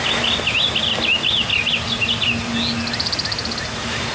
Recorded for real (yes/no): yes